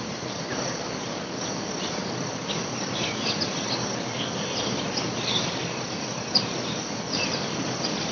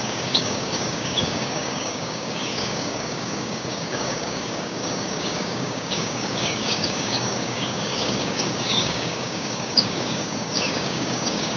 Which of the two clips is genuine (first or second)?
first